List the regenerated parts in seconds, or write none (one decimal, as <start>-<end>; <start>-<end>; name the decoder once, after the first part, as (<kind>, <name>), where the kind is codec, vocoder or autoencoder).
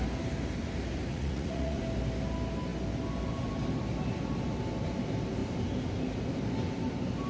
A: 1.1-1.8 (vocoder, Vocos)